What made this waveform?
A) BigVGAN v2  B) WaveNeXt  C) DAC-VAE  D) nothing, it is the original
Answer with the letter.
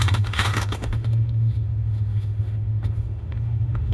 C